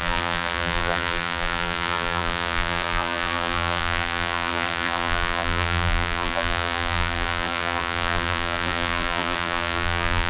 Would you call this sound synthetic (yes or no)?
yes